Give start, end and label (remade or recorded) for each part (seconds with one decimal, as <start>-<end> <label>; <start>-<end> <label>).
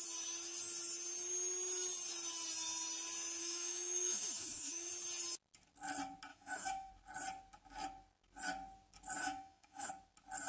0.0-3.4 recorded; 3.4-4.9 remade; 4.9-6.3 recorded; 6.3-6.9 remade; 6.9-9.2 recorded; 9.2-9.9 remade; 9.9-10.5 recorded